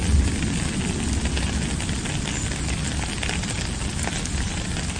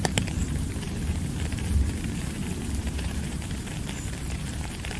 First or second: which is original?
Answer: first